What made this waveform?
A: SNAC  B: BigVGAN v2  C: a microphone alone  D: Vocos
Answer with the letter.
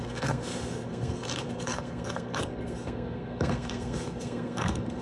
A